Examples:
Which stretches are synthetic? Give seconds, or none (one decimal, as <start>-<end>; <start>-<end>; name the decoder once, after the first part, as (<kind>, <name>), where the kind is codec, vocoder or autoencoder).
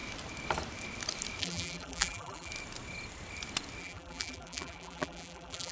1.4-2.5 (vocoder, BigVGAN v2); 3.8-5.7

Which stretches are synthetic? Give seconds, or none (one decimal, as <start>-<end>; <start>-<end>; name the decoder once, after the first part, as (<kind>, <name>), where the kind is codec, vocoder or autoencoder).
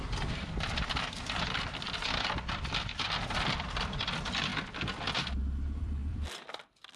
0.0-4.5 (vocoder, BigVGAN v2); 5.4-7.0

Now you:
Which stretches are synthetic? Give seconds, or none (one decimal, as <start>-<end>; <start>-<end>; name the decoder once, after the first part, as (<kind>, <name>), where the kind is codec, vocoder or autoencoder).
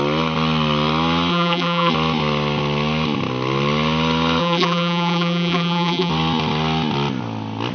1.3-1.9 (vocoder, BigVGAN v2); 4.4-6.1